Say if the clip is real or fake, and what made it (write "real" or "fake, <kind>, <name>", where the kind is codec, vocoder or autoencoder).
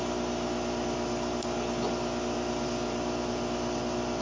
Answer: real